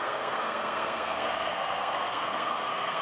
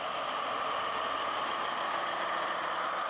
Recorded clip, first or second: second